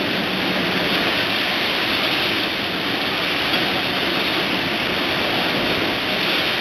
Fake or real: real